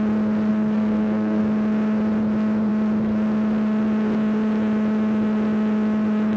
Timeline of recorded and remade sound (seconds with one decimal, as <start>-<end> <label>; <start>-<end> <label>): 0.0-0.5 recorded; 0.5-1.4 remade; 1.4-6.4 recorded